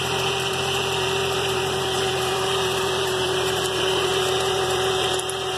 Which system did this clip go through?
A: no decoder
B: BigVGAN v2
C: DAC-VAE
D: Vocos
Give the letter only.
B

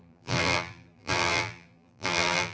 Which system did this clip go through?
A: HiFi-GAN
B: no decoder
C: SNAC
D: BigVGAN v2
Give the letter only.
D